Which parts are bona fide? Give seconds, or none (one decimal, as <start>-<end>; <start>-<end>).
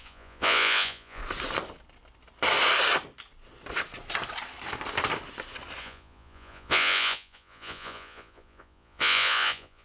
1.2-5.8